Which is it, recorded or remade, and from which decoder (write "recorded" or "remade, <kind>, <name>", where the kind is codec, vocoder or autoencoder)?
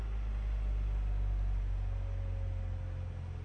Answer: recorded